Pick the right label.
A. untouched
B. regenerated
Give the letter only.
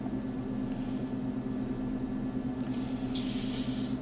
A